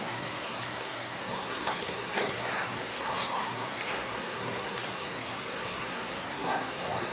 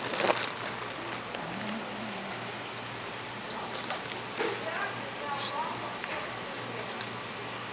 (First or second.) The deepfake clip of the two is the first